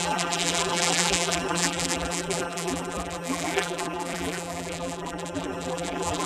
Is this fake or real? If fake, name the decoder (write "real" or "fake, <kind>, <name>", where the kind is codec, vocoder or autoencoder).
fake, vocoder, BigVGAN v2